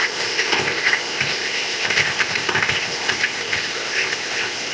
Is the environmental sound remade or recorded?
remade